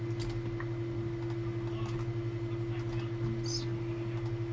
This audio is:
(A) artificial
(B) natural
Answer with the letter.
B